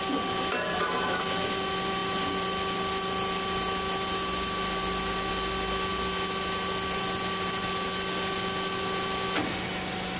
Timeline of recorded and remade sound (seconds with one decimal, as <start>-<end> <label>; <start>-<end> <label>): 0.0-10.2 recorded